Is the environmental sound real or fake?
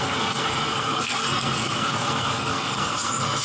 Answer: fake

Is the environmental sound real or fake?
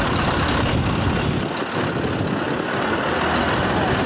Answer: real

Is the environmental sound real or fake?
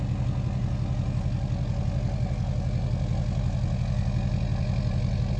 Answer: real